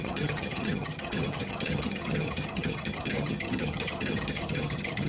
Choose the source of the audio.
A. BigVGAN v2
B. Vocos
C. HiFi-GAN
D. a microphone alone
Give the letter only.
C